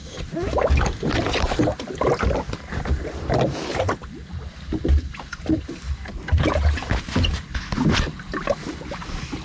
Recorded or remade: recorded